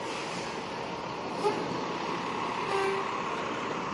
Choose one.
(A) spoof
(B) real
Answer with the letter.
B